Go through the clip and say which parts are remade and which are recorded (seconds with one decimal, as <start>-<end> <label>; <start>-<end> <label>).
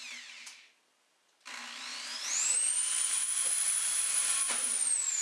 0.0-1.9 recorded; 1.9-4.7 remade; 4.7-5.2 recorded